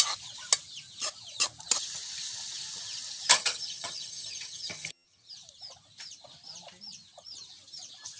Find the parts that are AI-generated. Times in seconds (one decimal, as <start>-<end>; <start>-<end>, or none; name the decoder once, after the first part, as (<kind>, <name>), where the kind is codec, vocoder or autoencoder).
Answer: 3.3-5.3 (vocoder, HiFi-GAN)